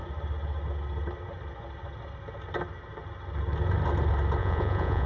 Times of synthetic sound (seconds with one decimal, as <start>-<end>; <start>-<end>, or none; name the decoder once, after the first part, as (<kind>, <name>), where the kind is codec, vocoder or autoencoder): 4.4-5.1 (vocoder, Vocos)